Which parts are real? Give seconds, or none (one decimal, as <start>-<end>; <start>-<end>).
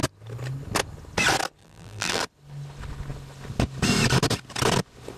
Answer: 0.0-1.6; 2.2-5.2